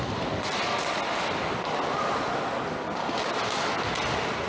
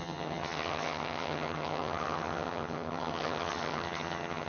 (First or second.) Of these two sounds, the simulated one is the second